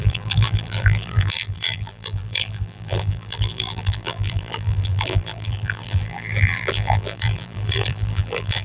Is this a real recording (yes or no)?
no